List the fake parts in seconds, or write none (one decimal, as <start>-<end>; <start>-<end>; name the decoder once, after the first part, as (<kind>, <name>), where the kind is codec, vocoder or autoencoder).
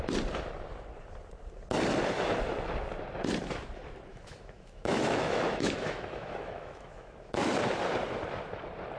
4.1-7.5 (autoencoder, DAC-VAE)